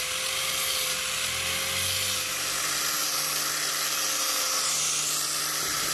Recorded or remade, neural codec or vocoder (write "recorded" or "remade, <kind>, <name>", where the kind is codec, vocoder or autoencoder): recorded